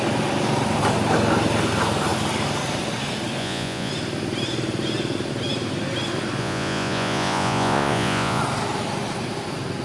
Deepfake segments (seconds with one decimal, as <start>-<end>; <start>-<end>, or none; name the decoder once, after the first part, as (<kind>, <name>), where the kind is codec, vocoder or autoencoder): 3.4-3.9 (vocoder, Vocos); 6.4-8.4